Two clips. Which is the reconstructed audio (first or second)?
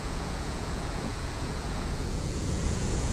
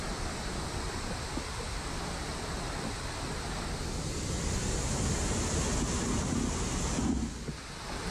first